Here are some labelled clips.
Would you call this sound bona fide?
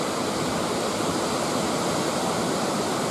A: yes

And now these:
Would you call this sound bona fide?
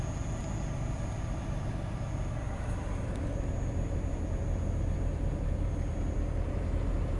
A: yes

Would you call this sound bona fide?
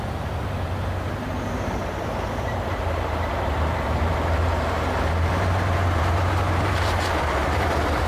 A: no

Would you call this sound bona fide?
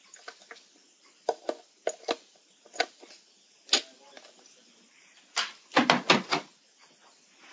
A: yes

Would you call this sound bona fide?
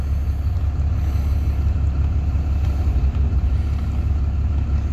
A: yes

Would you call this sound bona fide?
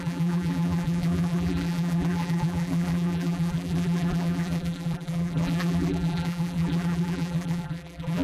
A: no